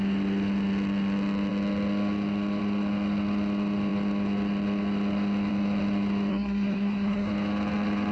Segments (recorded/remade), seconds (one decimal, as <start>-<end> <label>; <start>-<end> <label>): 0.0-6.3 recorded; 6.3-7.3 remade; 7.3-8.1 recorded